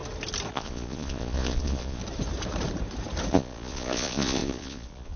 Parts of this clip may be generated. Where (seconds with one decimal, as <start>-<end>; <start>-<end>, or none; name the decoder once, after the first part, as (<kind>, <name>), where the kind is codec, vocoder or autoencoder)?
0.5-2.0 (vocoder, Vocos); 3.3-5.2